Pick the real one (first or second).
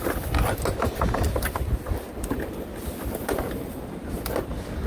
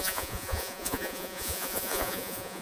first